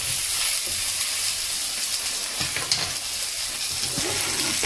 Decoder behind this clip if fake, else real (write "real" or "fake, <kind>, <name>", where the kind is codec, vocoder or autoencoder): real